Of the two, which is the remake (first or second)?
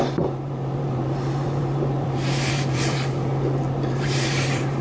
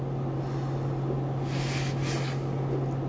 first